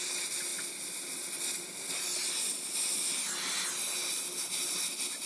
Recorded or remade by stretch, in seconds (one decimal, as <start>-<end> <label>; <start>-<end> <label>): 0.0-5.3 recorded